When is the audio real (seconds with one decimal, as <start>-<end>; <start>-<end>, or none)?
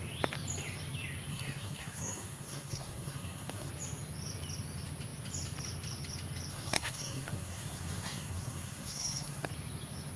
0.0-1.3; 3.7-6.5; 9.5-10.2